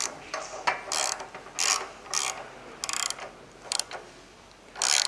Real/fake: real